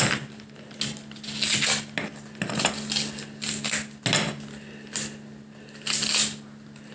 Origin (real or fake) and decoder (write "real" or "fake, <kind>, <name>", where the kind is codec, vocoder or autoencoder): real